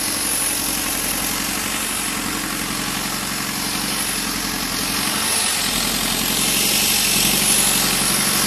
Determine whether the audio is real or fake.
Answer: real